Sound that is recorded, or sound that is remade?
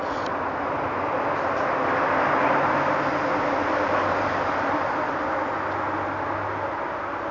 recorded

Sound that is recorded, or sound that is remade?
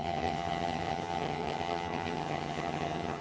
remade